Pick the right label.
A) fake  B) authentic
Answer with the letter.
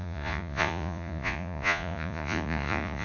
A